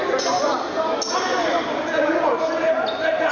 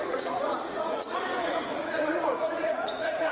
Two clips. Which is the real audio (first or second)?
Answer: first